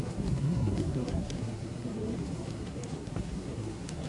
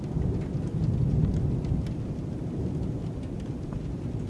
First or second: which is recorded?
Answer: second